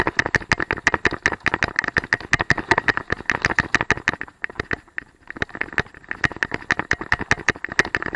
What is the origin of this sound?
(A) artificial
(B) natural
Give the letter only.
B